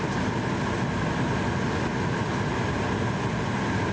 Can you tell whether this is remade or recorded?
recorded